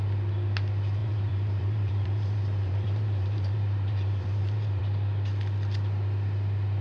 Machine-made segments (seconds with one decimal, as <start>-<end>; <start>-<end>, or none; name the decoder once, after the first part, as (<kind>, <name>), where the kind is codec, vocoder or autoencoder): 1.0-4.8 (vocoder, BigVGAN v2)